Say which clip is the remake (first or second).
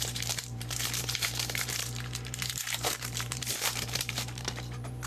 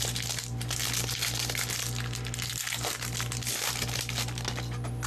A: first